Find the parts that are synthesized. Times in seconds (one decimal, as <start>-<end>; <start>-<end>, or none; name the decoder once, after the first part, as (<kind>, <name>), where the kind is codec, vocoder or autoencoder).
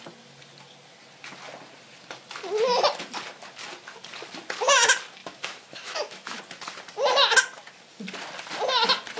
5.2-6.4 (autoencoder, DAC-VAE)